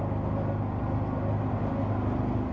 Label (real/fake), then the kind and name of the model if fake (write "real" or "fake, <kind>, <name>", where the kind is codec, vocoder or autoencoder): real